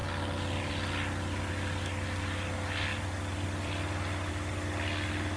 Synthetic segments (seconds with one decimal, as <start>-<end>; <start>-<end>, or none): none

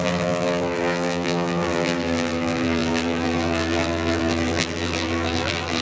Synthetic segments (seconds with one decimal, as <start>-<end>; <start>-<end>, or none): 0.0-5.8

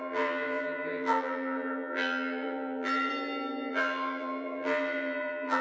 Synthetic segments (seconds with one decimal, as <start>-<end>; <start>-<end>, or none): 0.0-3.1; 3.7-5.6